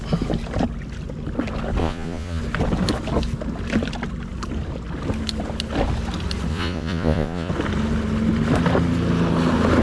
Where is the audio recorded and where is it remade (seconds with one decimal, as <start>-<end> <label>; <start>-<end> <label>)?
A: 0.0-1.8 recorded; 1.8-2.4 remade; 2.4-6.5 recorded; 6.5-7.5 remade; 7.5-9.8 recorded